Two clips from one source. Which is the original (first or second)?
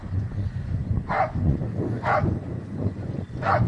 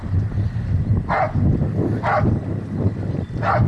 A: second